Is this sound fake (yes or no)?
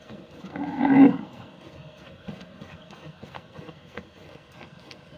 yes